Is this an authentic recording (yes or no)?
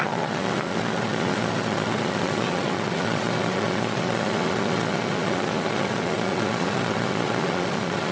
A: no